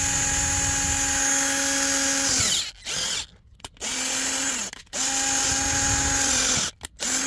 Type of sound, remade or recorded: recorded